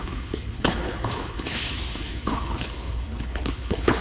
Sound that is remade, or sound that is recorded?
remade